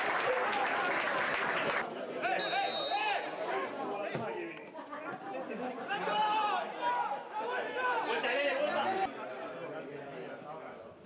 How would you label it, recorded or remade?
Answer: recorded